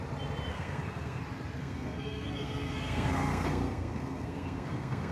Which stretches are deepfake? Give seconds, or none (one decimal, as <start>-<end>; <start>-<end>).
0.5-1.2; 1.6-5.1